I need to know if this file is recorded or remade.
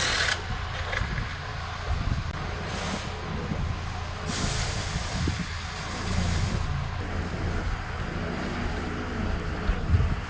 recorded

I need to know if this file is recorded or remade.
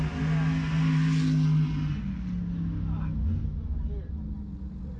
recorded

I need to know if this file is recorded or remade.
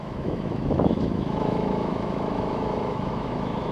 remade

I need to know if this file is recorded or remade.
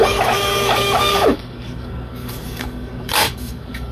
remade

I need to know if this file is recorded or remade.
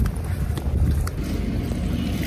recorded